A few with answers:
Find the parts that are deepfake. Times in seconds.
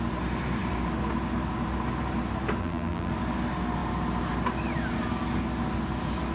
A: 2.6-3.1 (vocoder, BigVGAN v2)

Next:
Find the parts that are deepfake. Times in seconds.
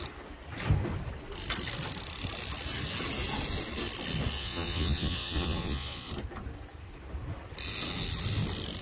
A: 4.4-6.1 (vocoder, Vocos)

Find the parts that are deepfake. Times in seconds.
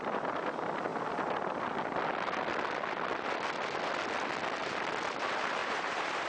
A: 5.6-6.3 (vocoder, BigVGAN v2)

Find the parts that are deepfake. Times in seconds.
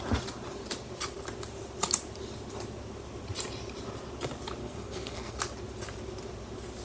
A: 4.6-5.4 (codec, SNAC)